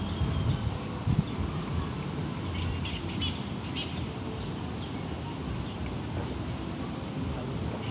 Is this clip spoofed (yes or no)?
no